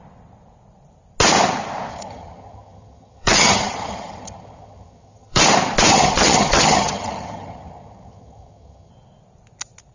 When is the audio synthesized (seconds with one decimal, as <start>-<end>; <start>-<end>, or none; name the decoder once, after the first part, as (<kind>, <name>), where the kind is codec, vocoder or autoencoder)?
1.9-5.4 (vocoder, HiFi-GAN); 5.9-8.9